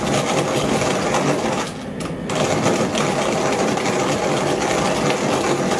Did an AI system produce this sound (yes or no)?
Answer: no